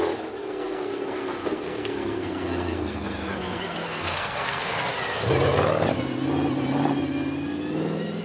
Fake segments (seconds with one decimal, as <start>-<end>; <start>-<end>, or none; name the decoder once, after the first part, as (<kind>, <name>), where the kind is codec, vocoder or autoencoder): 0.4-4.9 (codec, SNAC)

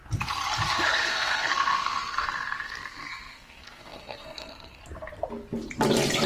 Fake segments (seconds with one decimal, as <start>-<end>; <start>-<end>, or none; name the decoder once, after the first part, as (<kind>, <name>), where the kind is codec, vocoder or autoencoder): 1.1-4.8 (codec, SNAC)

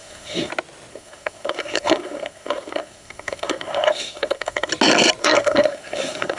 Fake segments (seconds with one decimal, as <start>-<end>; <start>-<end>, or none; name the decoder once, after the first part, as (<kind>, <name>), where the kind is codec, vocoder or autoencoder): 0.0-0.5 (codec, SNAC); 0.9-4.7; 5.2-6.4

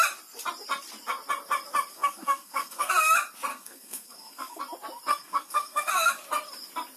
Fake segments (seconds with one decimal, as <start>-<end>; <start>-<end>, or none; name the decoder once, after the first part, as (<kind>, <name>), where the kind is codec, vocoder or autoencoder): 1.9-2.9 (codec, SNAC); 3.5-4.6; 5.1-6.1

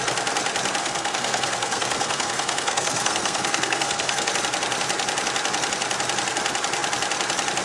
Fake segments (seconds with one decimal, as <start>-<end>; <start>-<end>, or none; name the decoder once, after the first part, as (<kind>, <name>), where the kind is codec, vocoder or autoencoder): 0.8-4.3 (codec, SNAC)

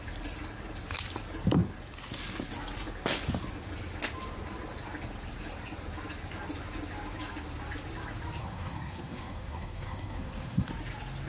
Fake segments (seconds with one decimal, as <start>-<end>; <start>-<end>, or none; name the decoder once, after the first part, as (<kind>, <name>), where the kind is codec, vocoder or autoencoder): 8.4-10.7 (codec, SNAC)

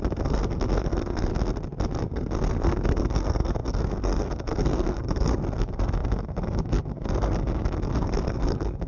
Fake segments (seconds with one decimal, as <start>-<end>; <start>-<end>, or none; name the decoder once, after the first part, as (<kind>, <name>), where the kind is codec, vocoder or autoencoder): 0.0-1.3 (codec, SNAC); 2.0-8.9

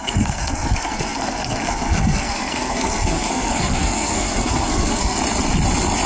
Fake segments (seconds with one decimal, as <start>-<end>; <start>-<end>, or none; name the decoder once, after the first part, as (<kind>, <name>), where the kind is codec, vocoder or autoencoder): 0.0-5.2 (codec, SNAC)